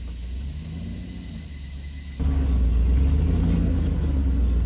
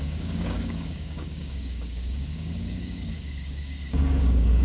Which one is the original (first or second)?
first